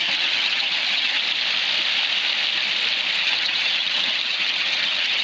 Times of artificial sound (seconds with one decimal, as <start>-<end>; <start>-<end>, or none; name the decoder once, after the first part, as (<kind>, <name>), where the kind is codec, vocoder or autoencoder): 0.0-1.2 (vocoder, HiFi-GAN); 3.2-5.2